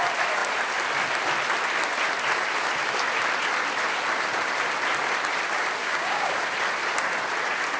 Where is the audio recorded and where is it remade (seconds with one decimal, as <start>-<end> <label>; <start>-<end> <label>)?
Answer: 0.0-5.8 recorded; 5.8-6.3 remade; 6.3-7.8 recorded